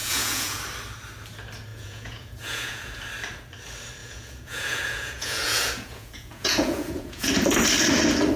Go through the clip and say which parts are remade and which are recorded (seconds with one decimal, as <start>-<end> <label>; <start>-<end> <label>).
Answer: 0.0-0.6 remade; 0.6-1.7 recorded; 1.7-3.0 remade; 3.0-4.0 recorded; 4.0-7.3 remade; 7.3-8.4 recorded